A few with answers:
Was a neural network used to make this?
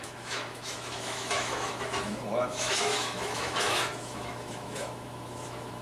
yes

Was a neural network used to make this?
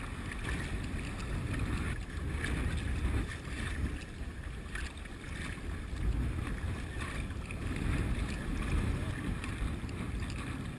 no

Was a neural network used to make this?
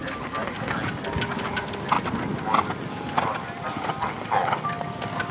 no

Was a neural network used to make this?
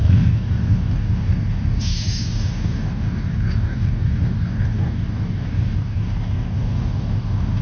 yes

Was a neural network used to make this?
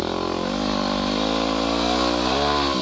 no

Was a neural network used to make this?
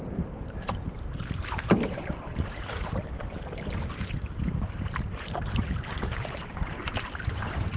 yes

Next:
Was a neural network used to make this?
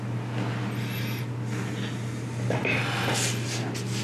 no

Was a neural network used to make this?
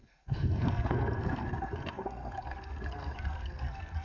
yes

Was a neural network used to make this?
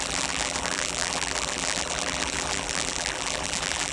yes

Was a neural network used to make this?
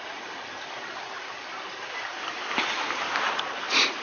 no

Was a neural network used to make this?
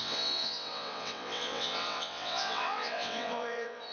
yes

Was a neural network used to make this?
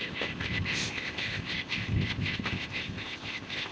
yes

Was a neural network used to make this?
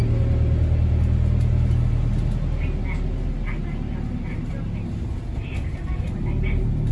no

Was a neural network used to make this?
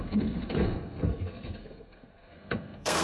yes